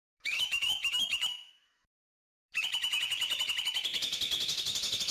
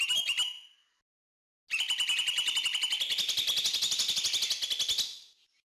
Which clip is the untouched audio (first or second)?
second